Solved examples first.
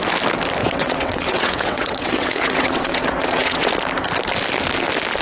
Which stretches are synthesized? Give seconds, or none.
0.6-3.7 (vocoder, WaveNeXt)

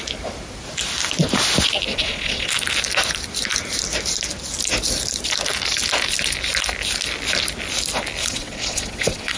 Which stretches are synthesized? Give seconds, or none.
1.9-2.5 (vocoder, WaveNeXt); 8.2-9.4

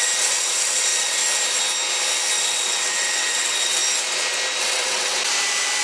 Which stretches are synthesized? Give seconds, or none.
0.0-1.2 (vocoder, WaveNeXt); 2.4-3.8; 4.6-5.2

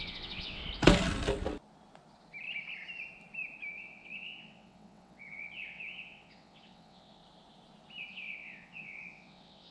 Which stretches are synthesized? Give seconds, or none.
0.0-0.6 (vocoder, WaveNeXt); 3.7-7.2; 8.1-9.7

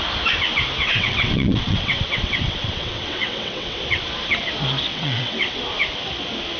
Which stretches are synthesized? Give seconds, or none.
0.8-4.0 (vocoder, WaveNeXt); 4.9-5.6